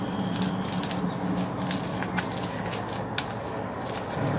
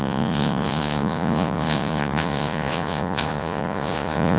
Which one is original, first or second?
first